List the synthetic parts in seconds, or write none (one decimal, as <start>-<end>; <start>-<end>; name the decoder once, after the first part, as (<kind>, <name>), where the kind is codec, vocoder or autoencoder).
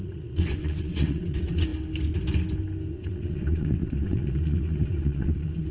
0.0-1.7 (vocoder, WaveNeXt); 2.9-5.7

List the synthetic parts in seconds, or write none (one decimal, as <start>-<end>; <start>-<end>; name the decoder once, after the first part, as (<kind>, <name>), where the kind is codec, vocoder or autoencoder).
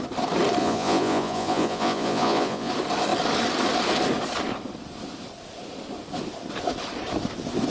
0.6-2.7 (vocoder, Vocos)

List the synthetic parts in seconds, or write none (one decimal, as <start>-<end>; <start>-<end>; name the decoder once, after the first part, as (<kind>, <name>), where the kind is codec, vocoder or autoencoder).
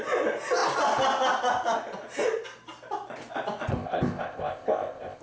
3.7-5.2 (codec, ZipCodec)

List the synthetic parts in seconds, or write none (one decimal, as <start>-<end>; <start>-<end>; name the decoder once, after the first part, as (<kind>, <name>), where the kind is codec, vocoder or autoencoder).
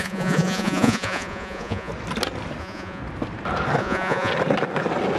0.0-1.9 (vocoder, Vocos); 2.6-3.0; 3.8-4.3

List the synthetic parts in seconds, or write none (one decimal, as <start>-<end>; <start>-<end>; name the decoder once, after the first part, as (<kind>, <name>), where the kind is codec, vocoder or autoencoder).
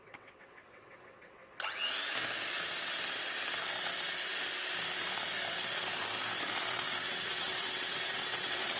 0.0-1.4 (vocoder, WaveNeXt); 6.6-8.8